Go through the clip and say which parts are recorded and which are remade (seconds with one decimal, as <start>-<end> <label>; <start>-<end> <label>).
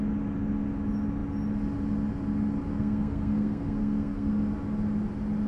0.0-2.7 recorded; 2.7-4.3 remade; 4.3-5.5 recorded